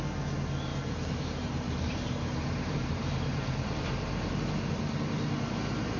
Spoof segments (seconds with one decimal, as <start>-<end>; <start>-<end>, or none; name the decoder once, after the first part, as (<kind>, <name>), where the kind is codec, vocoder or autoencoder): 0.7-4.3 (vocoder, BigVGAN v2)